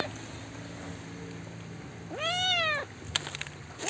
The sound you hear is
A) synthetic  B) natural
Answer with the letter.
B